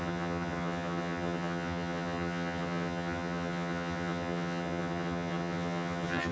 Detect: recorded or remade remade